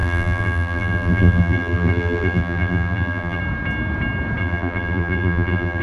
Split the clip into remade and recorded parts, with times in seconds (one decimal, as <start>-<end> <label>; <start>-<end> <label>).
0.0-3.4 remade; 3.4-4.4 recorded; 4.4-5.8 remade